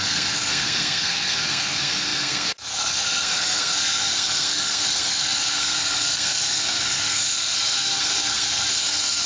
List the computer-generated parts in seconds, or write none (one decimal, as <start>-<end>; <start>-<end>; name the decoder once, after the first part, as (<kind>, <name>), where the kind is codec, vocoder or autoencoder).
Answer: 0.0-9.3 (codec, SNAC)